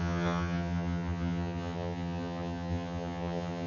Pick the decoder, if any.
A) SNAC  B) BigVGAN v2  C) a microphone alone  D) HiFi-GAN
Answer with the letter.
D